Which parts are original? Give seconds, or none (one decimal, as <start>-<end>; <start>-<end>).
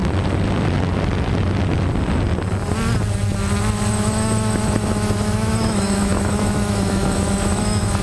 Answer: 0.0-3.9